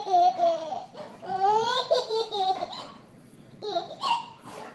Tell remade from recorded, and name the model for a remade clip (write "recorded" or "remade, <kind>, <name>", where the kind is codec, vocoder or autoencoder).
remade, vocoder, Vocos